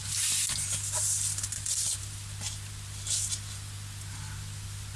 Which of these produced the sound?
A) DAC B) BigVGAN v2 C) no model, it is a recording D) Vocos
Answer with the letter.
B